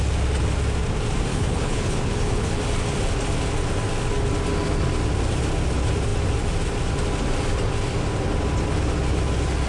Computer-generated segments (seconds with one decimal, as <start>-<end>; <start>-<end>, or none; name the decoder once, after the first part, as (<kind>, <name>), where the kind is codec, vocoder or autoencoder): 1.3-2.6 (codec, HILCodec)